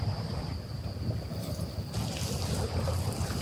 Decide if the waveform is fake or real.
fake